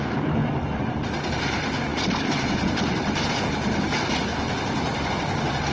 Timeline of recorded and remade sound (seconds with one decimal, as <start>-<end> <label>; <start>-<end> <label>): 0.0-0.4 recorded; 0.4-1.3 remade; 1.3-1.9 recorded; 1.9-3.4 remade; 3.4-4.3 recorded; 4.3-5.1 remade; 5.1-5.7 recorded